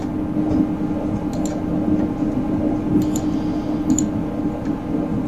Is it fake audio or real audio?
real